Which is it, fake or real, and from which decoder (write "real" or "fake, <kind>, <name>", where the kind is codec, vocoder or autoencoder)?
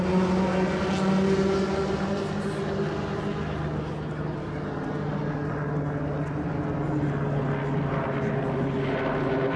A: real